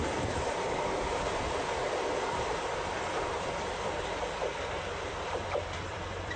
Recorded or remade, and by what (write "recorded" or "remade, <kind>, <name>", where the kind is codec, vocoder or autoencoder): remade, vocoder, BigVGAN v2